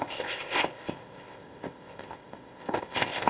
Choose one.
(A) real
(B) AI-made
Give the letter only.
B